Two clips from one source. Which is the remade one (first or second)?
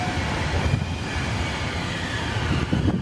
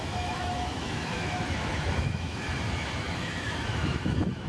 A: second